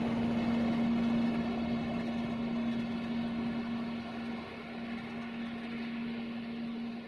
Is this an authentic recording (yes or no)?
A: yes